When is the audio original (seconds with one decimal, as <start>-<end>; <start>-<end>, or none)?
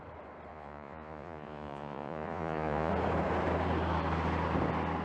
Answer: 0.0-0.5; 2.9-5.0